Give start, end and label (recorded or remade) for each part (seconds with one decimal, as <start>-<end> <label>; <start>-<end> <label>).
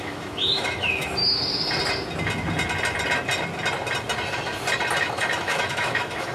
0.0-1.2 remade; 1.2-5.0 recorded; 5.0-6.3 remade